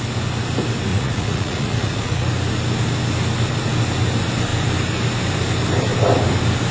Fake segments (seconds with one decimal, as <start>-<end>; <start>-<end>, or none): 0.9-2.3